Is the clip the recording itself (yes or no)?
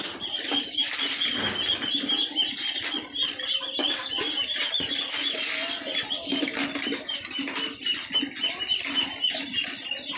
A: yes